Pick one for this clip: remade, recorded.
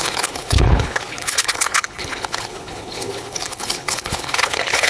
remade